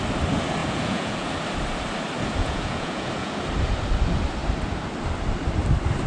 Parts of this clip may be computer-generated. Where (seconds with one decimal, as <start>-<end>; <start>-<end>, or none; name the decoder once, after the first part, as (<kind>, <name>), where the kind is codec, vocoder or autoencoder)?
0.6-1.3 (vocoder, Vocos); 2.4-3.3